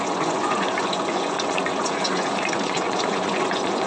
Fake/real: fake